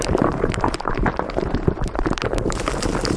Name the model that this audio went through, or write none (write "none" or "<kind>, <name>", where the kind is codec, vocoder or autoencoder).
vocoder, BigVGAN v2